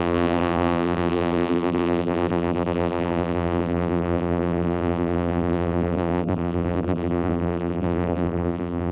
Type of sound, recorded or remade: remade